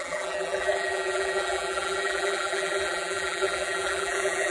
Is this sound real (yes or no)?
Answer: no